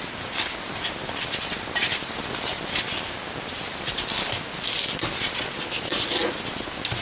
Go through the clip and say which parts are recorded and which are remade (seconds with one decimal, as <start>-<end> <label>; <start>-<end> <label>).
0.0-7.0 recorded